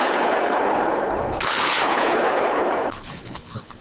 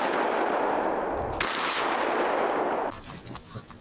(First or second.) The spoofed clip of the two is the first